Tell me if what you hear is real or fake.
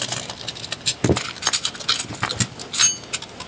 real